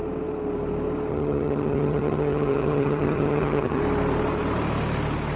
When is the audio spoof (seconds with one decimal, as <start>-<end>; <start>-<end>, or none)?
1.1-3.8

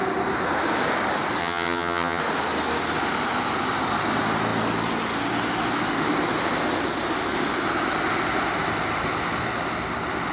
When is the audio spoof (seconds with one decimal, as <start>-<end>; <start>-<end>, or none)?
1.4-2.2

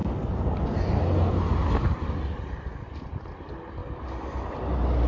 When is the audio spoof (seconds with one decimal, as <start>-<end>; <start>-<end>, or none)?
none

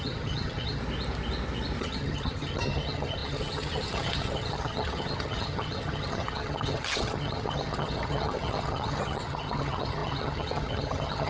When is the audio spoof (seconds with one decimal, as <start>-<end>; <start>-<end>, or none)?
0.0-0.8; 1.8-11.3

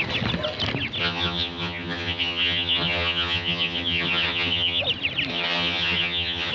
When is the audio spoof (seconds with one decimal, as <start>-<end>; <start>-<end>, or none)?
1.0-4.8; 5.3-6.5